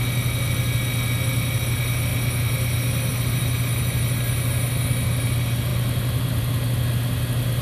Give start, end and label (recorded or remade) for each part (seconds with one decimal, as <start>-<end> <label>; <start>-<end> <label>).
0.0-7.6 recorded